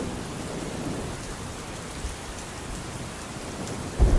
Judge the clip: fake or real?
real